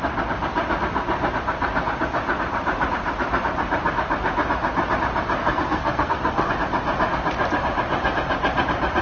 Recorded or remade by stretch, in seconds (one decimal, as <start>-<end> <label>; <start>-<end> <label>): 0.0-5.4 recorded; 5.4-6.5 remade; 6.5-9.0 recorded